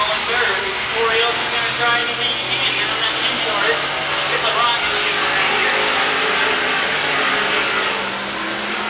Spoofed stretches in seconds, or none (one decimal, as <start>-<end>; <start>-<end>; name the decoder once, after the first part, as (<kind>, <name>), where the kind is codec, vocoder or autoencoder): none